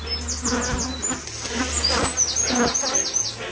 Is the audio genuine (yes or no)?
yes